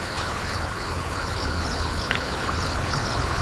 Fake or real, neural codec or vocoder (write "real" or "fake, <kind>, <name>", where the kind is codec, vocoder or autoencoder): fake, codec, HILCodec